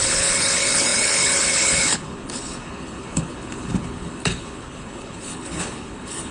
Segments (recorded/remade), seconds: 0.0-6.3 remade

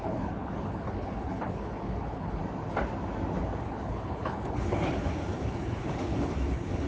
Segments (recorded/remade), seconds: 0.0-2.4 remade; 2.4-3.6 recorded; 3.6-6.9 remade

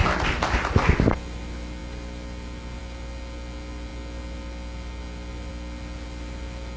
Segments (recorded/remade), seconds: 0.0-6.8 recorded

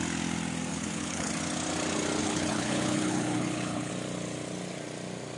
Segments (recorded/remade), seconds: 0.0-0.7 recorded; 0.7-1.3 remade; 1.3-2.2 recorded; 2.2-3.9 remade; 3.9-5.4 recorded

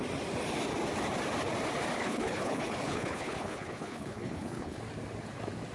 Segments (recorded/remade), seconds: 0.0-2.0 recorded; 2.0-4.8 remade; 4.8-5.7 recorded

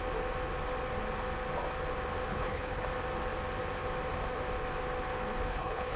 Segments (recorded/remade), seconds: 0.0-2.3 recorded; 2.3-2.8 remade; 2.8-5.5 recorded; 5.5-6.0 remade